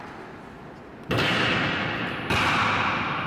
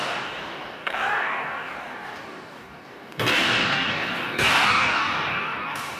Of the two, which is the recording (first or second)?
first